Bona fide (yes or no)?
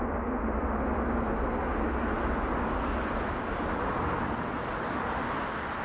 yes